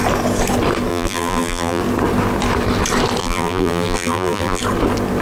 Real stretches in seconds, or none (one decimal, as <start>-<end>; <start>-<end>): 0.0-0.9; 1.8-3.2; 4.6-5.2